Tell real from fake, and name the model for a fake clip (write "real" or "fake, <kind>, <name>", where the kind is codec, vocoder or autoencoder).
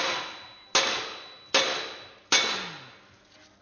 real